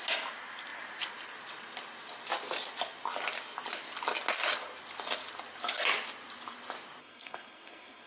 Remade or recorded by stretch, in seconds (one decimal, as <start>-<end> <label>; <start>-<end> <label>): 0.0-7.0 recorded; 7.0-8.1 remade